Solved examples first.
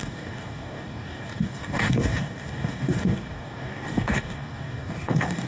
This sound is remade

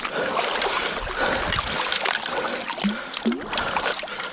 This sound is recorded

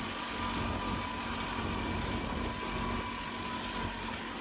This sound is recorded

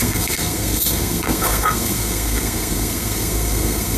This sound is remade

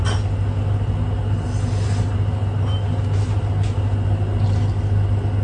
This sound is recorded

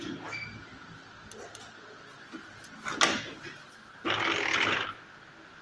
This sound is recorded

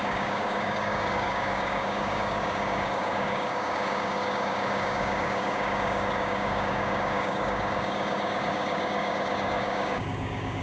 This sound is remade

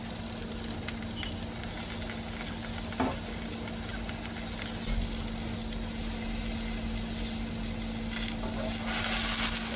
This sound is recorded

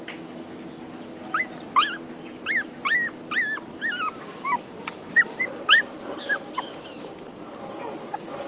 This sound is recorded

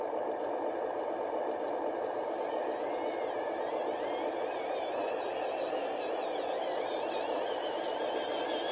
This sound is recorded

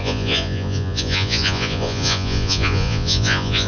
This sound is remade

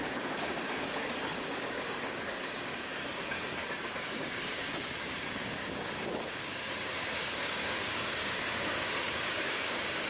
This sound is remade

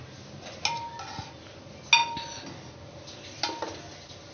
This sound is recorded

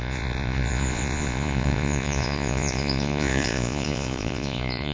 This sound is remade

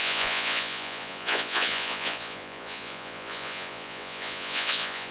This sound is remade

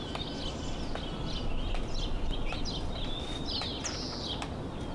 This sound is recorded